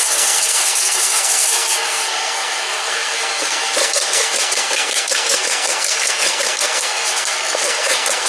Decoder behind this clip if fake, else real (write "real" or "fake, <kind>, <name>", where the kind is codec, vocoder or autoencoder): fake, codec, SNAC